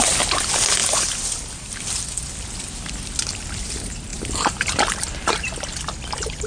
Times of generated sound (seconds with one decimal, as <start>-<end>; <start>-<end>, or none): none